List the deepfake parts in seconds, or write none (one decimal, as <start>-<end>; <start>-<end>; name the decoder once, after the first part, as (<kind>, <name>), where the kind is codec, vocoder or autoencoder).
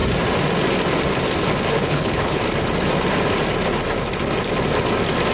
1.8-2.4 (codec, HILCodec)